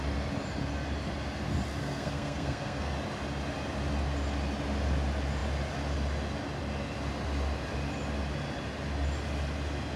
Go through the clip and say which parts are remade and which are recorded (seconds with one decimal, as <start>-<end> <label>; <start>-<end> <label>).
0.0-1.8 recorded; 1.8-2.9 remade; 2.9-10.0 recorded

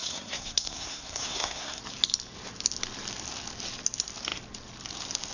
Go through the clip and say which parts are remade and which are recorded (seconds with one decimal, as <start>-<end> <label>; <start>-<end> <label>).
0.0-1.8 remade; 1.8-5.3 recorded